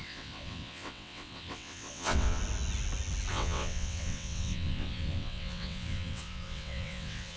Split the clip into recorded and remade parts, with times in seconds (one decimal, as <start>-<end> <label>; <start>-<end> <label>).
0.0-2.4 remade; 2.4-3.3 recorded; 3.3-7.4 remade